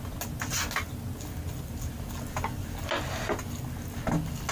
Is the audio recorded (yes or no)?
yes